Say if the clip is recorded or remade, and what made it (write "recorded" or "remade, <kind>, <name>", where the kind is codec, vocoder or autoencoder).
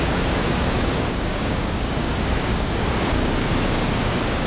remade, codec, DAC